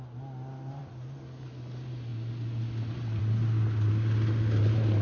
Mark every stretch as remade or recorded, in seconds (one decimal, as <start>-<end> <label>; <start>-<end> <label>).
0.0-5.0 recorded

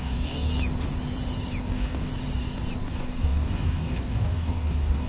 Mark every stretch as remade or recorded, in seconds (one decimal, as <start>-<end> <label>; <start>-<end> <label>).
0.0-0.5 remade; 0.5-1.6 recorded; 1.6-2.1 remade; 2.1-2.9 recorded; 2.9-5.1 remade

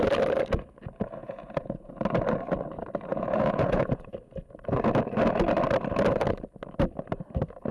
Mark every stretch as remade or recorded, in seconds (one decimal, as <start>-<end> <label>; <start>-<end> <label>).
0.0-1.2 recorded; 1.2-1.9 remade; 1.9-3.1 recorded; 3.1-4.1 remade; 4.1-7.7 recorded

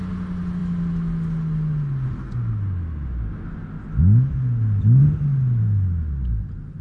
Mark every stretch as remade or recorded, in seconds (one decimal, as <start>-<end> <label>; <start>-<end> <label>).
0.0-6.8 recorded

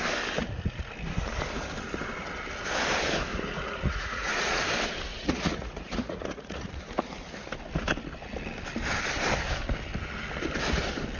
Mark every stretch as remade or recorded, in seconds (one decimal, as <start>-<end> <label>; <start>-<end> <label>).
0.0-0.4 recorded; 0.4-0.9 remade; 0.9-3.3 recorded; 3.3-4.6 remade; 4.6-5.1 recorded; 5.1-6.7 remade; 6.7-11.2 recorded

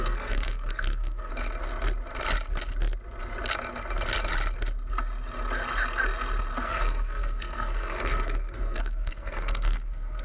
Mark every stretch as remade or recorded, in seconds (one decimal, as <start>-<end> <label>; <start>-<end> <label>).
0.0-1.3 remade; 1.3-6.6 recorded; 6.6-10.2 remade

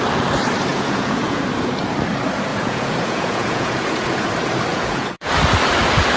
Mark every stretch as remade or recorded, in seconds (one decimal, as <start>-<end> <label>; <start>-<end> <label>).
0.0-0.7 recorded; 0.7-1.5 remade; 1.5-2.5 recorded; 2.5-4.3 remade; 4.3-4.7 recorded; 4.7-5.3 remade; 5.3-6.2 recorded